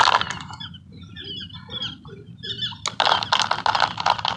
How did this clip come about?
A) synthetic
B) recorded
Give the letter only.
B